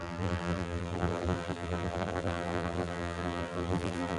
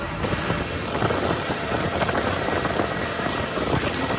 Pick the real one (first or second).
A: second